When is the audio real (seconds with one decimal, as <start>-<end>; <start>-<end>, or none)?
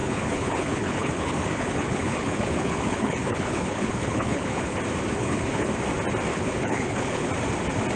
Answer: 4.8-5.2; 5.7-6.3; 7.3-8.0